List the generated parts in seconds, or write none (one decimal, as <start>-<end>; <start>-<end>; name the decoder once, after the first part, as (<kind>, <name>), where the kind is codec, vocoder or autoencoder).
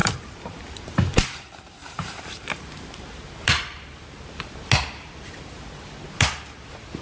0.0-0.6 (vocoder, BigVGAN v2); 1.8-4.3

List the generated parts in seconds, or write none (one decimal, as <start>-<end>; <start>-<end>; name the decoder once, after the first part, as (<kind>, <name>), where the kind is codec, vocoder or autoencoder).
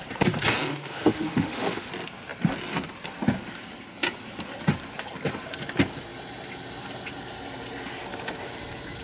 0.7-1.9 (autoencoder, DAC-VAE)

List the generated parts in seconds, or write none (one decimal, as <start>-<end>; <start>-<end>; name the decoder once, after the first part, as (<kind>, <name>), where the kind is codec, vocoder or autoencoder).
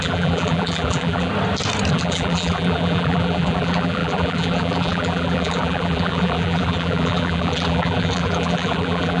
0.0-1.3 (vocoder, BigVGAN v2); 1.9-9.2